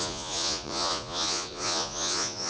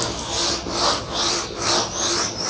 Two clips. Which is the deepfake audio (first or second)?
first